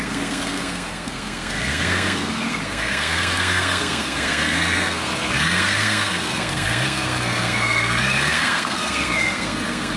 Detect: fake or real fake